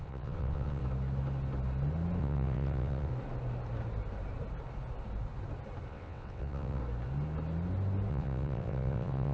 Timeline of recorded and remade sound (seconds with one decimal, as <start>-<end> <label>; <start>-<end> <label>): 0.0-0.8 remade; 0.8-2.2 recorded; 2.2-3.1 remade; 3.1-5.9 recorded; 5.9-6.8 remade; 6.8-8.1 recorded; 8.1-9.3 remade